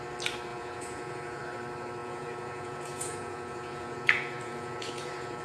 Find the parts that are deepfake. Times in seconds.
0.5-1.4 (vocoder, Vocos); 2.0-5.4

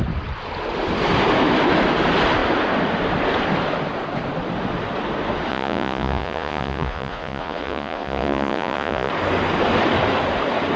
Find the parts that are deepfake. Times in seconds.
5.5-9.1 (vocoder, Vocos)

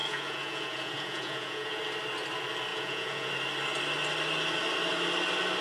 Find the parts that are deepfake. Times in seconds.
0.0-1.8 (vocoder, Vocos); 2.7-3.3

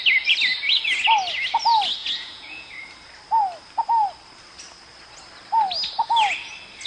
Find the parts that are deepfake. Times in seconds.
2.0-2.7 (vocoder, Vocos)

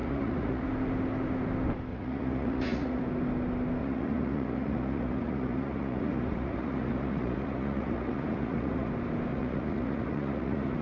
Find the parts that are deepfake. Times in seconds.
0.0-0.6 (vocoder, Vocos); 1.9-3.0; 3.8-8.9; 9.3-10.8

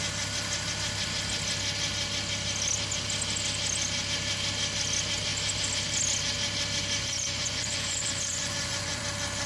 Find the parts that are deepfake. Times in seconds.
7.0-9.0 (vocoder, Vocos)

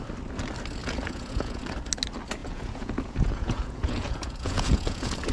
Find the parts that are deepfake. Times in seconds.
0.8-1.6 (vocoder, Vocos); 2.4-5.3

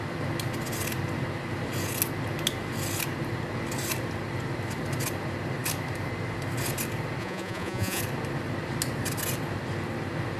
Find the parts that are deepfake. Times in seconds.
7.2-8.0 (vocoder, Vocos)